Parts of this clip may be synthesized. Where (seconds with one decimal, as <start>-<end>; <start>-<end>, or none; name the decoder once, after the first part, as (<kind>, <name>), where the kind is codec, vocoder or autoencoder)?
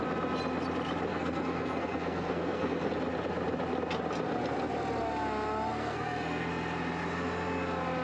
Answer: 1.1-2.9 (codec, SNAC); 5.7-6.5